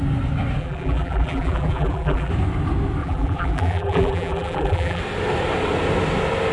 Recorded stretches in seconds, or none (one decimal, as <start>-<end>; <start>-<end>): 0.0-0.6; 2.3-3.0; 5.0-6.5